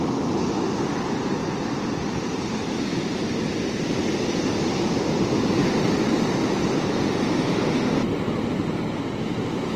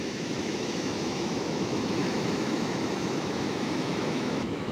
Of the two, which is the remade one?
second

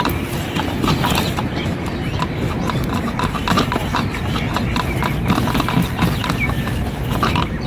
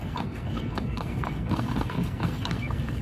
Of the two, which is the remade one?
second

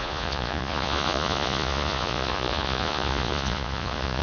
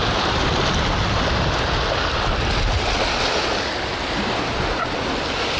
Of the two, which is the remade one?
first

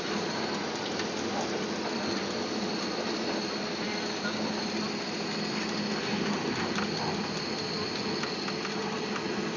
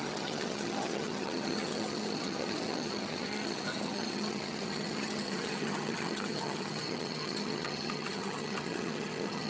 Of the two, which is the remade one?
second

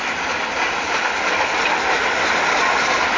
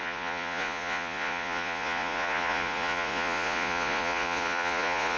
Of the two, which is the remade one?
second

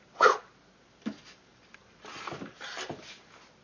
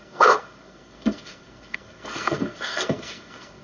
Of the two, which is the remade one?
second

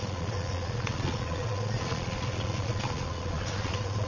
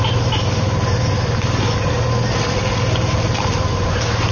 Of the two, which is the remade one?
first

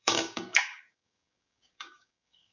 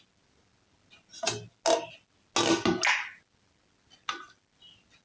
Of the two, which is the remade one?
first